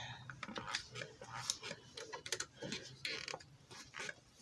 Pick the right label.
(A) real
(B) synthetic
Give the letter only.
A